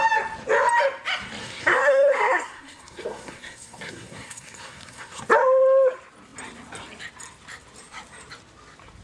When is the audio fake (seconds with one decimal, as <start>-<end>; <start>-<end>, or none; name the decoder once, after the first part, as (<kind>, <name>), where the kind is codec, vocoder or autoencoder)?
1.4-5.2 (codec, SNAC)

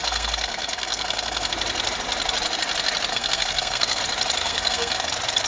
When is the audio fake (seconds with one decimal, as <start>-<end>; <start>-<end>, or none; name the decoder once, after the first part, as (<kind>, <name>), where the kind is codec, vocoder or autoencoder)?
0.0-1.5 (codec, SNAC); 3.1-4.0; 4.4-5.1